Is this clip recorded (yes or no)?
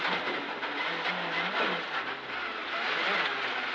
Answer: yes